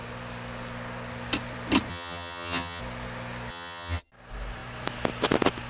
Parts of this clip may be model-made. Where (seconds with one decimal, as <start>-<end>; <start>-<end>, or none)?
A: 1.9-2.8; 3.5-4.1